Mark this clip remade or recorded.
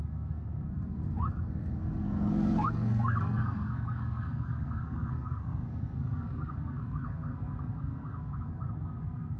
remade